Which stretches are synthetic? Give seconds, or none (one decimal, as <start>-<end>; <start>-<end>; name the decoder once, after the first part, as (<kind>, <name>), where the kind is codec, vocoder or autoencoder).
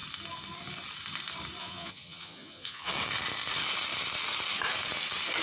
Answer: 1.6-2.9 (vocoder, Vocos)